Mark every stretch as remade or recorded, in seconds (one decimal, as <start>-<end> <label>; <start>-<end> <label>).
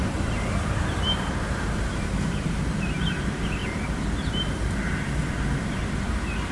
0.0-2.7 remade; 2.7-6.5 recorded